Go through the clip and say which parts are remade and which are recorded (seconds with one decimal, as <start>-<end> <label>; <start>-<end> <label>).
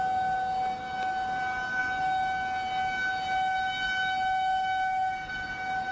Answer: 0.0-5.9 recorded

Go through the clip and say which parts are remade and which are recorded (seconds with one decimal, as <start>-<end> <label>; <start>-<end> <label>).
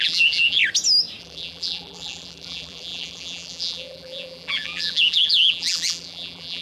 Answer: 0.0-0.6 remade; 0.6-1.2 recorded; 1.2-6.6 remade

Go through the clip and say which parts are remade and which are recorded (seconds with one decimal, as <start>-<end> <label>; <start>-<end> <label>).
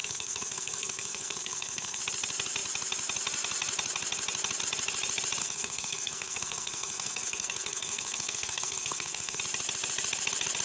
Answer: 0.0-2.0 remade; 2.0-5.4 recorded; 5.4-9.4 remade; 9.4-10.6 recorded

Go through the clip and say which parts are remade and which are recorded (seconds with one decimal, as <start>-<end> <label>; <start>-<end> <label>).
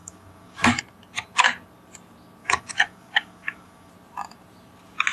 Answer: 0.0-0.8 remade; 0.8-2.4 recorded; 2.4-3.9 remade; 3.9-5.1 recorded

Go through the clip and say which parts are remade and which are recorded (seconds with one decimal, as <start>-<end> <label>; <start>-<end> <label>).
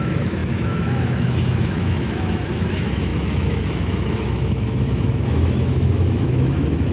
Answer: 0.0-6.9 remade